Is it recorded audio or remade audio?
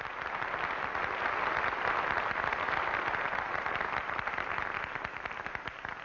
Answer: recorded